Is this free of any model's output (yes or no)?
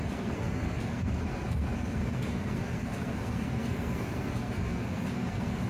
no